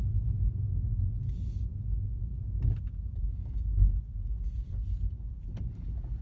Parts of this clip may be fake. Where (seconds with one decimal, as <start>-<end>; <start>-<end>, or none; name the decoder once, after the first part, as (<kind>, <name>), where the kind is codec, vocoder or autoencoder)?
none